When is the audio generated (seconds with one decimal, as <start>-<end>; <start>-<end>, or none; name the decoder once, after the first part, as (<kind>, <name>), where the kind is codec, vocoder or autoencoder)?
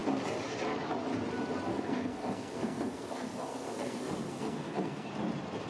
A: 1.7-5.1 (codec, SNAC)